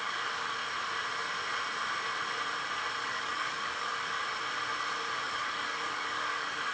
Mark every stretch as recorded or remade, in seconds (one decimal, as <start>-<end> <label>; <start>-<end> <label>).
0.0-0.6 remade; 0.6-3.0 recorded; 3.0-4.2 remade; 4.2-5.2 recorded; 5.2-6.7 remade